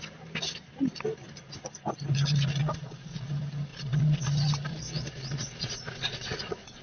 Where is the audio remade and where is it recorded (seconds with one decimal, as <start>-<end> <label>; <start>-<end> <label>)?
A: 0.0-2.6 recorded; 2.6-3.3 remade; 3.3-3.7 recorded; 3.7-4.3 remade; 4.3-4.7 recorded; 4.7-6.8 remade